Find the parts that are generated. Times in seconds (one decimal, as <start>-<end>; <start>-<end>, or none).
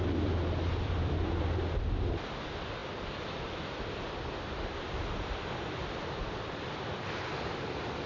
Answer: none